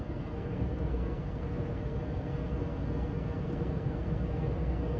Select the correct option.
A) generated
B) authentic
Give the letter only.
A